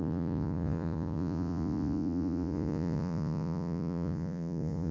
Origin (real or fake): fake